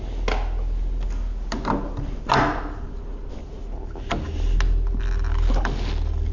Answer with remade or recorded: recorded